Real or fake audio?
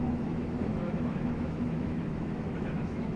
fake